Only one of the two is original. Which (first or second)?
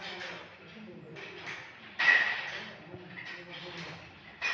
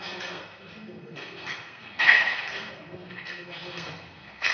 first